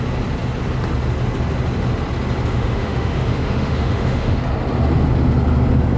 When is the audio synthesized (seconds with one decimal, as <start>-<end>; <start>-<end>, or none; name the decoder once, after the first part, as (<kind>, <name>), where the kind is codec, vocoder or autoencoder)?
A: 2.5-4.4 (autoencoder, DAC-VAE)